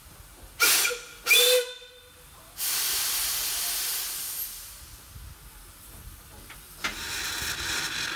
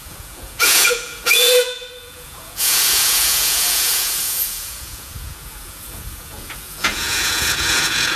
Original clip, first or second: first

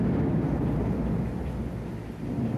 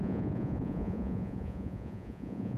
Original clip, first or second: first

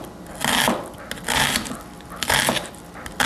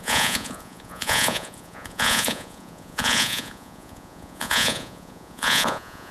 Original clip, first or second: first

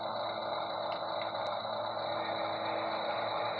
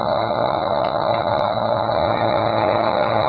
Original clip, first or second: first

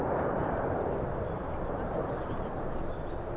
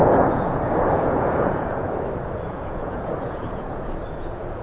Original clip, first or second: first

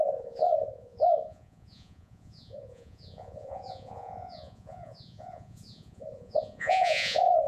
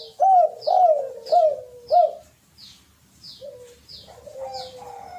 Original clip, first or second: second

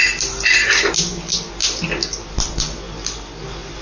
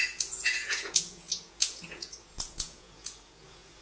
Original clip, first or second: first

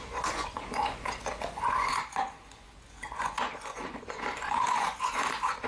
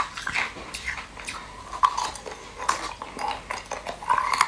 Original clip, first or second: second